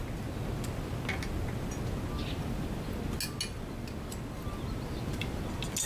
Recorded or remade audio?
recorded